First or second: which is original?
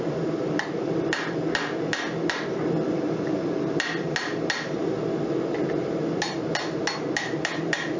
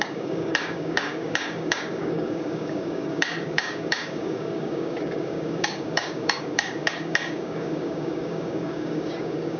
first